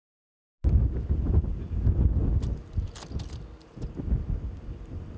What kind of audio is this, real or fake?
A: real